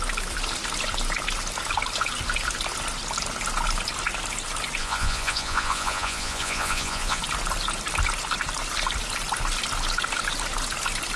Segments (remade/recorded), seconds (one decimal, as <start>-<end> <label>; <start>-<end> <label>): 0.0-4.8 recorded; 4.8-7.2 remade; 7.2-11.2 recorded